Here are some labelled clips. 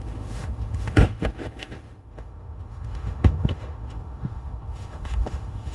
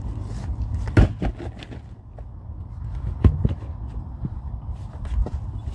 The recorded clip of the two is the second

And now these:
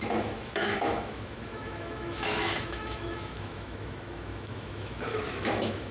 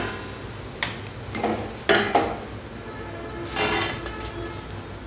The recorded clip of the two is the second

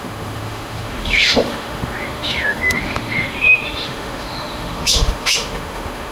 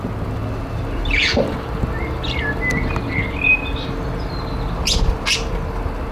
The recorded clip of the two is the second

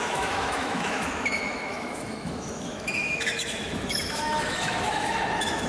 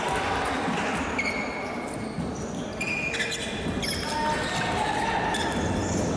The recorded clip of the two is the second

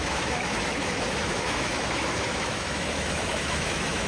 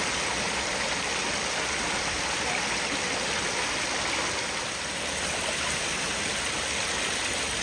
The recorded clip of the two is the second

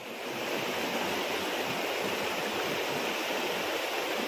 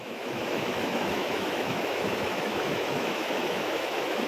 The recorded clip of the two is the first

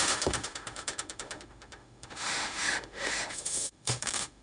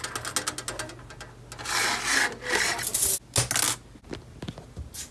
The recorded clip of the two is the second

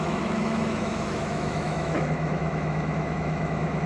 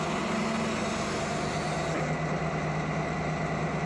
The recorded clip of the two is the second